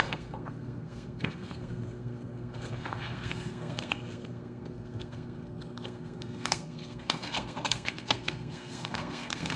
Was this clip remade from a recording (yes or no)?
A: yes